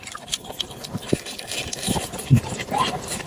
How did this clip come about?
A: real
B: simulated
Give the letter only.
A